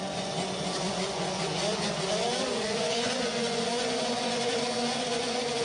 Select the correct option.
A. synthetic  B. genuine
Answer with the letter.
A